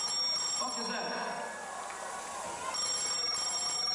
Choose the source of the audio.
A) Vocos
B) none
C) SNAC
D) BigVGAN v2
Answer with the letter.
B